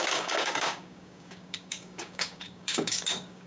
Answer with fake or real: fake